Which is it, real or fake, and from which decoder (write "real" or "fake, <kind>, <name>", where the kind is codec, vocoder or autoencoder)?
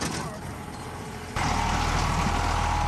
real